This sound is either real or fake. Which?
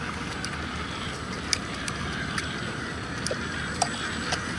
real